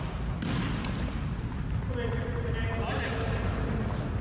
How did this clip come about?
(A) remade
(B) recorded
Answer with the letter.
B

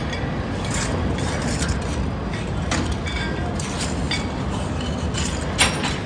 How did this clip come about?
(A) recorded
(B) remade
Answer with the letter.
A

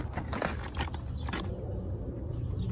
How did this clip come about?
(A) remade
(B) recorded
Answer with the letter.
B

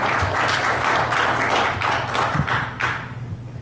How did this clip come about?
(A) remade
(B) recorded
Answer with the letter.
B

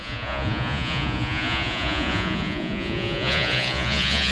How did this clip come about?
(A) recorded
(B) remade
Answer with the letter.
B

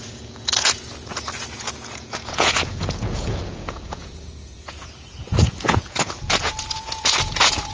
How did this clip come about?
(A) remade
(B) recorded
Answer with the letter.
A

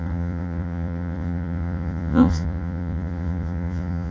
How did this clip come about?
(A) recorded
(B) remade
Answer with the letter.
B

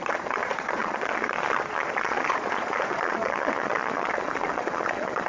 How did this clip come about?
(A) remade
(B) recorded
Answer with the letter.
A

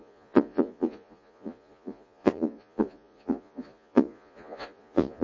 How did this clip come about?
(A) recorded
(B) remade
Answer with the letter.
B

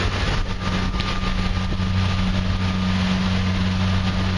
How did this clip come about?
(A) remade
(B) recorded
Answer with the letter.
B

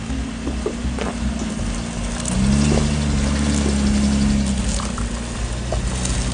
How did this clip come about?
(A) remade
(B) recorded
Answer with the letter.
B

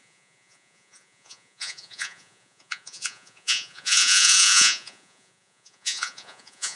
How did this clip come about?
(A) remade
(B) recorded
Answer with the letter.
A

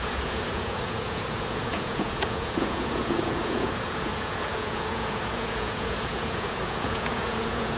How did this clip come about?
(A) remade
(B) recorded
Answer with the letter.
A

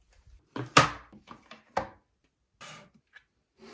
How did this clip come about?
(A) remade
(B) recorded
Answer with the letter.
B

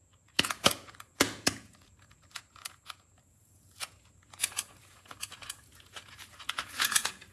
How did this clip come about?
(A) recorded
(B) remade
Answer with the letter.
B